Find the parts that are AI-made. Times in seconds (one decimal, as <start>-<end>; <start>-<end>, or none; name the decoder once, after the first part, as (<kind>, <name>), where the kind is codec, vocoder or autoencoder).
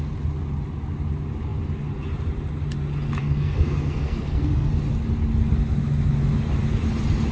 3.2-4.7 (codec, SNAC)